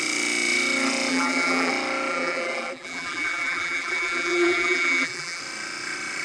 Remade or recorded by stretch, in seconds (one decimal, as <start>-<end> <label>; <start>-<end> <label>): 0.0-1.1 recorded; 1.1-1.7 remade; 1.7-2.1 recorded; 2.1-5.4 remade; 5.4-6.2 recorded